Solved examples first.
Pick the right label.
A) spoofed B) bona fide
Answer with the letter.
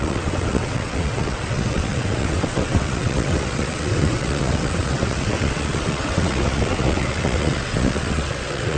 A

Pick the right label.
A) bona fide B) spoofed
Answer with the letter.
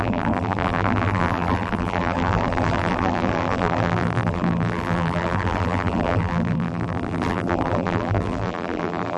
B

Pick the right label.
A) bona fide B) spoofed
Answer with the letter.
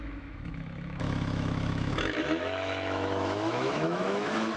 B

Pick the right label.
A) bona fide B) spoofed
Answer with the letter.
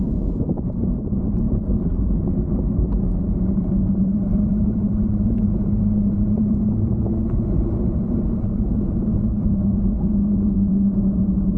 B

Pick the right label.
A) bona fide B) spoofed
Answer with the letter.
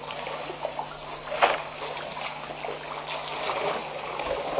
A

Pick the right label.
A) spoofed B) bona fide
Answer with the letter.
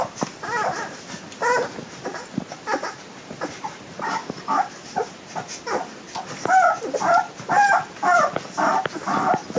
B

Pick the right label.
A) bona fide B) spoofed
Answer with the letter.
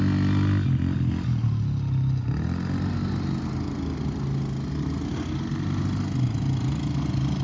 A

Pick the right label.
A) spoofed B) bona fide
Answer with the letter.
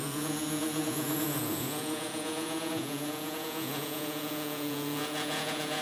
A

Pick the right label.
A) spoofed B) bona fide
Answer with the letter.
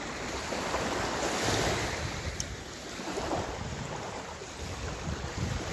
B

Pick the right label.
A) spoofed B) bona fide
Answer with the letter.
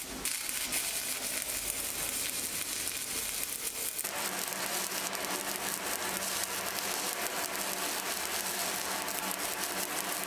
B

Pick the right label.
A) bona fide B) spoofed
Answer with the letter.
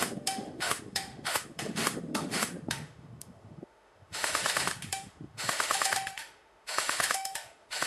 B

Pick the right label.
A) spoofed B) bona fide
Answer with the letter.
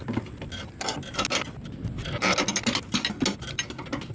B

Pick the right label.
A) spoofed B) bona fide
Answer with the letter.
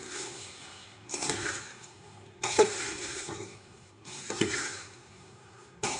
A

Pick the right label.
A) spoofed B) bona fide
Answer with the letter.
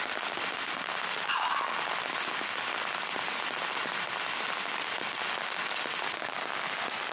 B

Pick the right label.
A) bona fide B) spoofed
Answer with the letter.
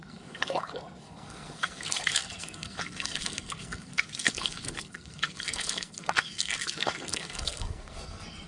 B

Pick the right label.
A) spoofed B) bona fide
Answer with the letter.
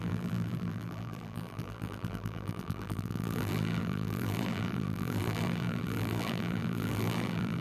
A